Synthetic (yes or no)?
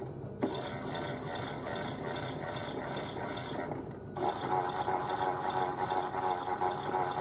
no